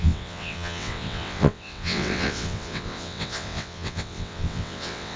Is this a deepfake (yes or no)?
yes